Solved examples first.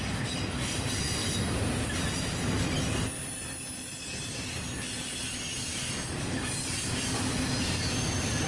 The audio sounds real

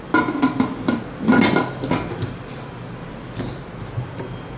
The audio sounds real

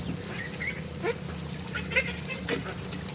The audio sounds real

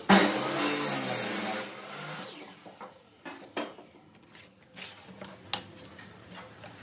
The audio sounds real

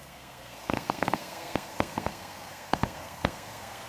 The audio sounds fake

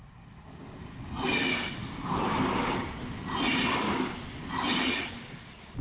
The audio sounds real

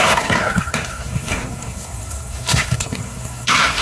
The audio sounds fake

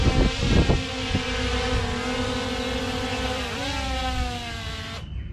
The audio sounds real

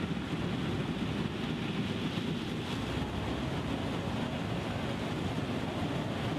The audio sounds real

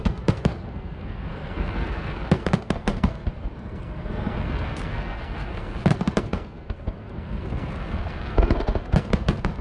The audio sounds fake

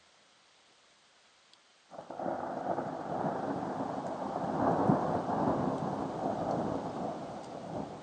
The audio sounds real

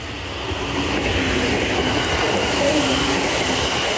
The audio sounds real